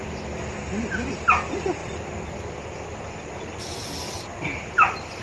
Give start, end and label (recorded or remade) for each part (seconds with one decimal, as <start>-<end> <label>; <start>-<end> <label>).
0.0-5.2 recorded